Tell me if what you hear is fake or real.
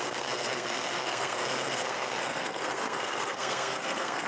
fake